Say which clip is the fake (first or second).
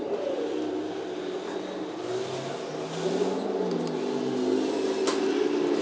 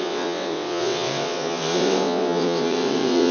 second